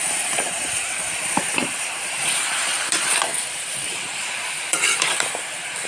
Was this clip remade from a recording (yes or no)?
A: yes